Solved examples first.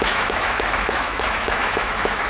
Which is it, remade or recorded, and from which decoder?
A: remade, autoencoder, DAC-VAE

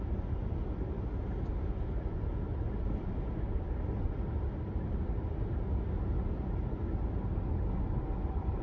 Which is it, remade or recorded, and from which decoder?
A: recorded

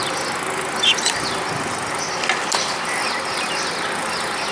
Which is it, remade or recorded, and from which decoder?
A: recorded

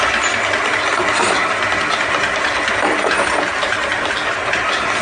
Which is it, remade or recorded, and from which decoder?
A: recorded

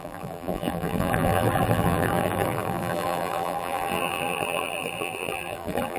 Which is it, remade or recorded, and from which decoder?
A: remade, vocoder, BigVGAN v2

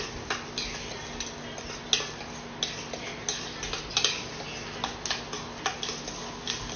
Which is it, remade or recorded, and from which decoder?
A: recorded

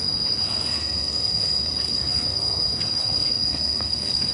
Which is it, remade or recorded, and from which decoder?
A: remade, codec, SNAC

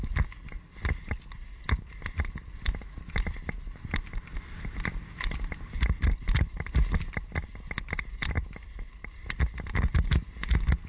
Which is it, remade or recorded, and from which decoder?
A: recorded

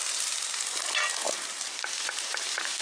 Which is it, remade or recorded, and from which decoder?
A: remade, vocoder, BigVGAN v2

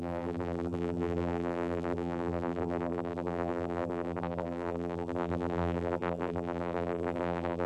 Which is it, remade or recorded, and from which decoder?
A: remade, vocoder, BigVGAN v2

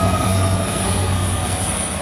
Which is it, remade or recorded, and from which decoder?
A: remade, codec, SNAC